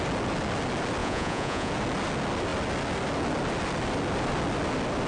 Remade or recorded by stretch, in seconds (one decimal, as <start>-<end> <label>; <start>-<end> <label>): 0.0-1.0 recorded; 1.0-1.7 remade; 1.7-5.1 recorded

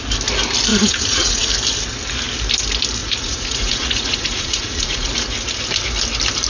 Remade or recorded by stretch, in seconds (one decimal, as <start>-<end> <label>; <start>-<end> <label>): 0.0-0.7 recorded; 0.7-1.5 remade; 1.5-3.0 recorded; 3.0-5.1 remade; 5.1-6.5 recorded

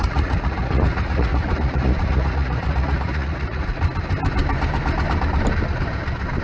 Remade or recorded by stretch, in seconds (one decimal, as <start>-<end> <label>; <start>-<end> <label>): 0.0-3.8 remade; 3.8-6.4 recorded

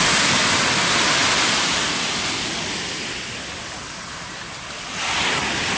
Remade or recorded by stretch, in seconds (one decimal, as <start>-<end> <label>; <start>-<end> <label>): 0.0-5.8 recorded